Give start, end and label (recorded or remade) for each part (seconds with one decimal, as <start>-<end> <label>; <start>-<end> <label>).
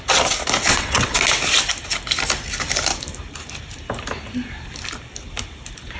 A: 0.0-0.7 recorded; 0.7-1.2 remade; 1.2-6.0 recorded